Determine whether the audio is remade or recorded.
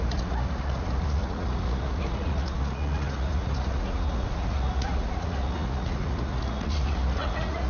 remade